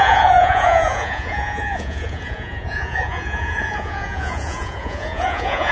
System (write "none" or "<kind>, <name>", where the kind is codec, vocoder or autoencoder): vocoder, Vocos